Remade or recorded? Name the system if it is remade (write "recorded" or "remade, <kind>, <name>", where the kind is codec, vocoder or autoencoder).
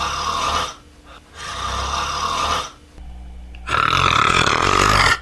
recorded